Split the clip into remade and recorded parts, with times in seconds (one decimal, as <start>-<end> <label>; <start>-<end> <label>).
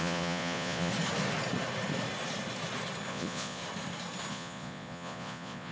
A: 0.0-0.9 remade; 0.9-3.1 recorded; 3.1-3.6 remade; 3.6-4.3 recorded; 4.3-5.7 remade